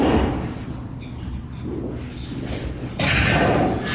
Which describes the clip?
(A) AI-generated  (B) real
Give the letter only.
B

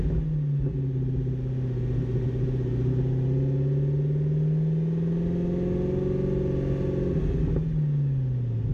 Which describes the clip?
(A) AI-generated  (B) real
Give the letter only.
B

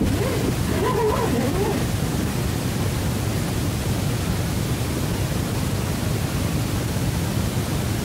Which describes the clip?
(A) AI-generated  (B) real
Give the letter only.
B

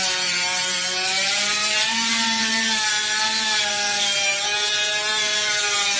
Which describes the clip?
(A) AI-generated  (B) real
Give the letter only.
A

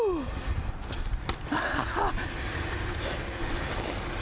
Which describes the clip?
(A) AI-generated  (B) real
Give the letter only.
B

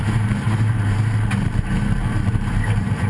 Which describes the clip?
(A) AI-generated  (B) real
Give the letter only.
A